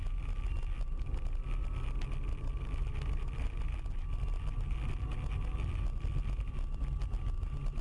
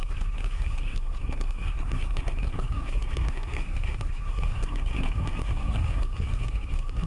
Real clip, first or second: first